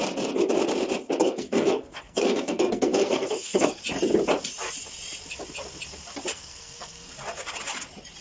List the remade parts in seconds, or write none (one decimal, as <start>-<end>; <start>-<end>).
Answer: 1.2-3.8; 6.3-7.1